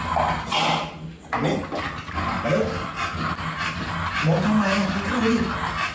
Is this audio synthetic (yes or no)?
no